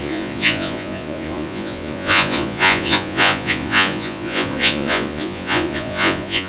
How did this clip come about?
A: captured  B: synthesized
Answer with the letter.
B